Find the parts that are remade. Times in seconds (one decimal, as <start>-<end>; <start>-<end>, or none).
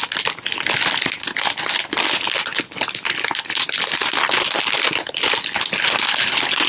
none